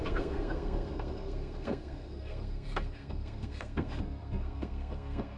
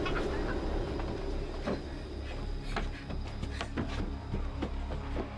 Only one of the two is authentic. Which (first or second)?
second